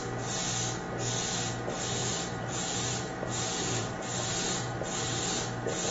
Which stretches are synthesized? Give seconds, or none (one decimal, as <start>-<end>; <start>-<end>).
2.0-5.2